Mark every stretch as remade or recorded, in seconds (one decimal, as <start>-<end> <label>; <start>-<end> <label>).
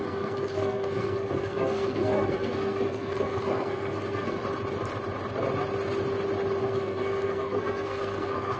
0.0-4.4 remade; 4.4-6.6 recorded; 6.6-8.6 remade